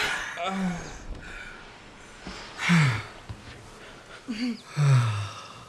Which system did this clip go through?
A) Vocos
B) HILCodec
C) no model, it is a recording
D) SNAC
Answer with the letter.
C